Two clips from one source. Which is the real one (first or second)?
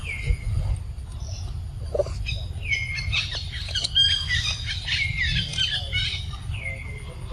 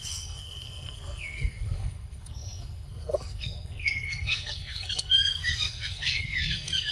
first